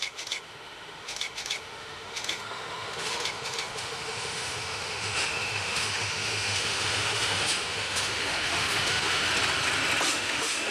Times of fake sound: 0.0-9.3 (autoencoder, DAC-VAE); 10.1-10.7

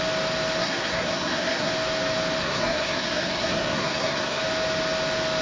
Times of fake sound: 0.6-1.7 (codec, SNAC); 2.4-4.4

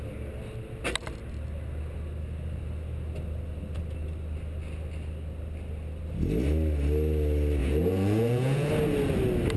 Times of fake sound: 7.6-8.7 (vocoder, Vocos)

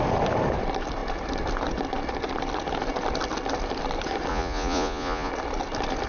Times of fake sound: 4.3-5.3 (vocoder, Vocos)

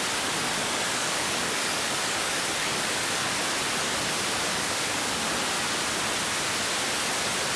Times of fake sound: 0.6-3.3 (codec, DAC); 4.5-5.3

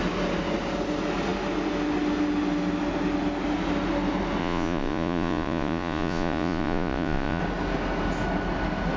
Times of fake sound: 4.4-7.4 (vocoder, Vocos)